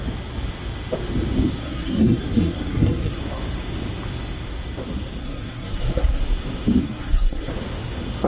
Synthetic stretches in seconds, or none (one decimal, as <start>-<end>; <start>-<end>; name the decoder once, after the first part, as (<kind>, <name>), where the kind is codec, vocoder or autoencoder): 1.6-3.2 (codec, SNAC); 5.2-6.2; 6.8-7.5

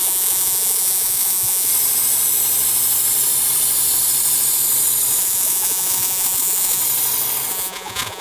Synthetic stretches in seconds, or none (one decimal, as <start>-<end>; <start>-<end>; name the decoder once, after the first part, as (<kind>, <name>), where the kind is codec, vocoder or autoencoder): 0.0-1.7 (vocoder, Vocos); 5.2-6.8; 7.5-8.2